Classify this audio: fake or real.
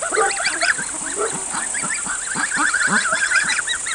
real